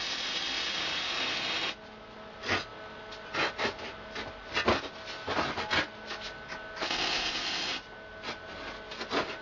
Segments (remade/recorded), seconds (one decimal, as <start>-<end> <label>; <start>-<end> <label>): 0.0-9.4 recorded